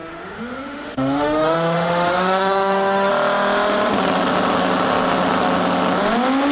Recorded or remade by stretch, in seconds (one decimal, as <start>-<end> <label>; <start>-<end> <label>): 0.0-3.1 remade; 3.1-6.5 recorded